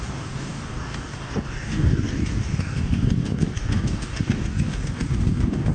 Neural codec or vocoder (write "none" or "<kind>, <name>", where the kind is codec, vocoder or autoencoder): codec, DAC